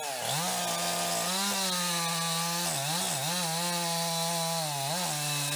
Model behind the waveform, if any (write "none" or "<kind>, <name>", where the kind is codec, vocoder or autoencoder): none